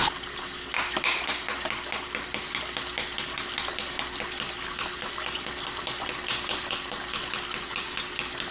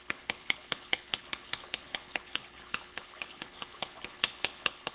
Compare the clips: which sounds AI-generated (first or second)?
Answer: second